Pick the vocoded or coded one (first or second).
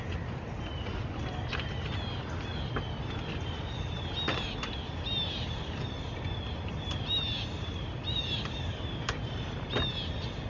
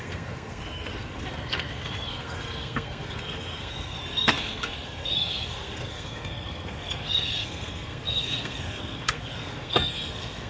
second